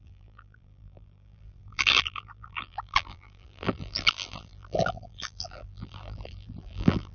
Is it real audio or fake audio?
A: fake